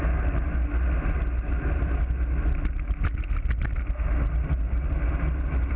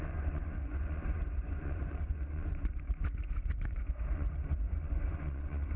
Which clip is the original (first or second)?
first